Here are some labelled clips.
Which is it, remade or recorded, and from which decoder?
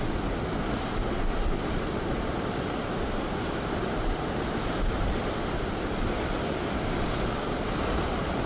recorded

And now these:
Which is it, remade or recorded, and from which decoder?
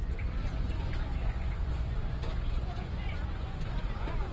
remade, vocoder, Vocos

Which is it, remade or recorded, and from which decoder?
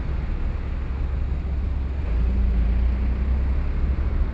recorded